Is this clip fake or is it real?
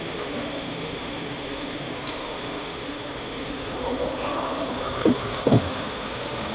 fake